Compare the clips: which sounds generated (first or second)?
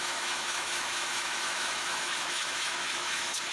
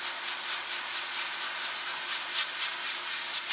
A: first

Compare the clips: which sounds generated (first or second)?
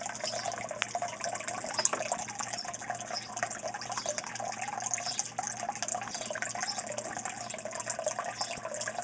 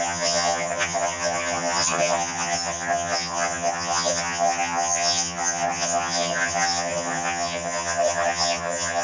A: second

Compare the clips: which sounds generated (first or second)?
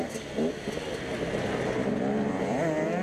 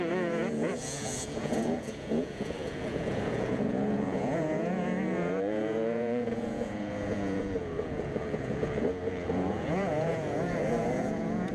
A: second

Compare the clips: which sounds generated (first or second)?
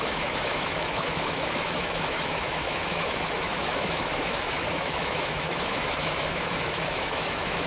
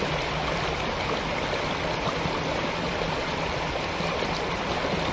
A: first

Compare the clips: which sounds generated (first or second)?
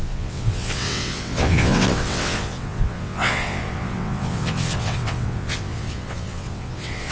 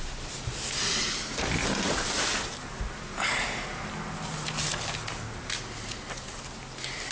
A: first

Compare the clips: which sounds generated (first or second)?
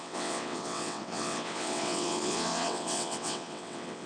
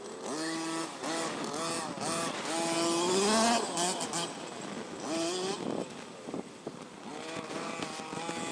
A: first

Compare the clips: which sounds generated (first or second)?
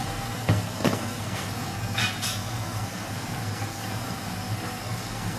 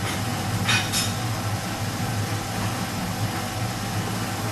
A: first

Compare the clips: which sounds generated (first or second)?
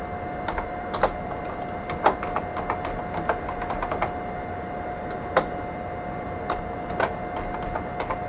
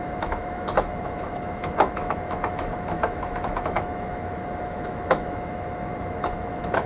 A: second